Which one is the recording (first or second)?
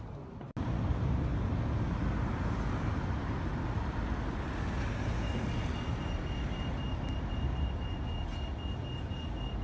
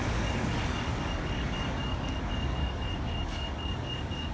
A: first